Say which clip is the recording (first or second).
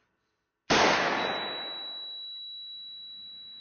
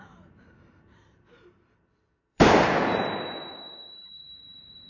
first